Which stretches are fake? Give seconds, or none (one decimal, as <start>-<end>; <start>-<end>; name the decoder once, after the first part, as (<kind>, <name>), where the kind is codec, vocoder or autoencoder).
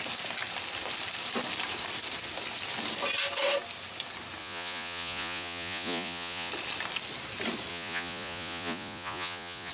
4.4-6.5 (vocoder, Vocos); 7.7-9.7